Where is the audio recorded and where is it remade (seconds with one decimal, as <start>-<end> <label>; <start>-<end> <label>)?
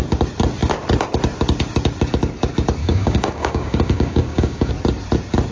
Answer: 0.0-2.8 recorded; 2.8-4.7 remade; 4.7-5.5 recorded